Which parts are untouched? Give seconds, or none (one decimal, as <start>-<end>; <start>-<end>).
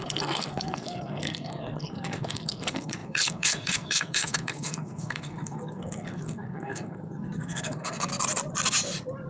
8.1-9.3